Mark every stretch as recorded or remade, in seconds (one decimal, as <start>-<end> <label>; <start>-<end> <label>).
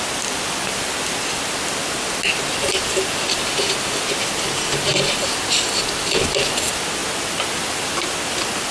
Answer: 0.0-8.7 recorded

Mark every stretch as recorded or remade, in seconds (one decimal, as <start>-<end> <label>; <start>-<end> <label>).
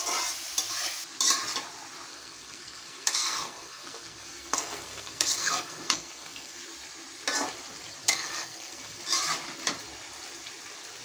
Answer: 0.0-2.1 recorded; 2.1-6.6 remade; 6.6-8.0 recorded; 8.0-9.0 remade; 9.0-11.0 recorded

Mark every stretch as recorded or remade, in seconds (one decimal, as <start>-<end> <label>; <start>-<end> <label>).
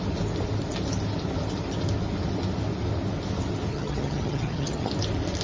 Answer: 0.0-3.7 recorded; 3.7-4.9 remade; 4.9-5.4 recorded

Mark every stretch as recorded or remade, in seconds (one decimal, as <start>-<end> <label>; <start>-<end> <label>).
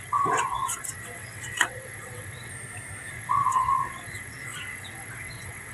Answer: 0.0-2.5 remade; 2.5-3.1 recorded; 3.1-5.7 remade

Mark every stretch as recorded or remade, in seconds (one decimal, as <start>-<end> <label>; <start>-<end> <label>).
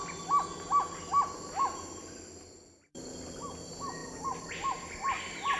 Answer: 0.0-5.6 recorded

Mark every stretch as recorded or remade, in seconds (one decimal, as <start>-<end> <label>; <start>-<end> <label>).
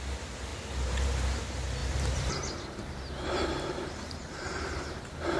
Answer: 0.0-1.8 recorded; 1.8-5.0 remade; 5.0-5.4 recorded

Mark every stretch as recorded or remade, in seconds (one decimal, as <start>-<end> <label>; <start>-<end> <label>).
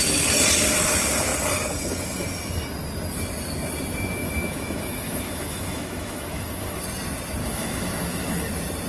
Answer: 0.0-4.2 recorded; 4.2-6.8 remade; 6.8-7.4 recorded; 7.4-8.5 remade; 8.5-8.9 recorded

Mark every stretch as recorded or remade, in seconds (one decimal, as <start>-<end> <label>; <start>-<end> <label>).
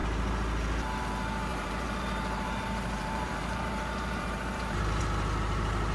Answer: 0.0-1.5 recorded; 1.5-5.0 remade; 5.0-5.9 recorded